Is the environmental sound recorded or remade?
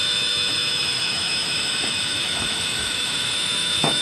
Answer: remade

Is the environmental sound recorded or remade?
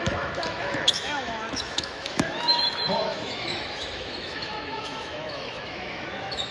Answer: remade